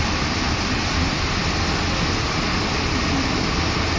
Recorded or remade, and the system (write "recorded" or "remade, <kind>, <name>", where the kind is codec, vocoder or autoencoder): recorded